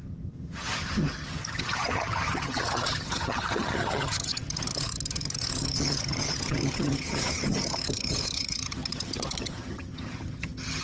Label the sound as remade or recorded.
remade